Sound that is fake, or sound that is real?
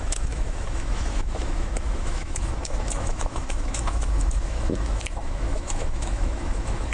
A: fake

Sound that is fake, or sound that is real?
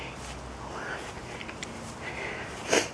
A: real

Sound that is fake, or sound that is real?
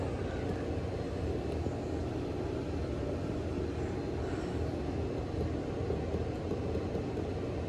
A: real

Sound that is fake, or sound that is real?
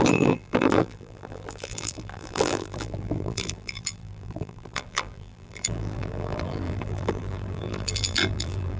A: fake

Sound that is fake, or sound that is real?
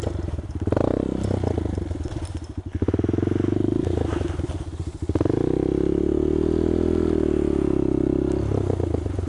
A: real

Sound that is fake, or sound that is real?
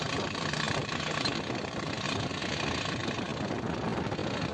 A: real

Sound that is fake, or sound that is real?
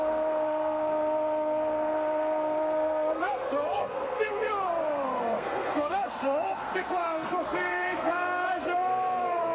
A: fake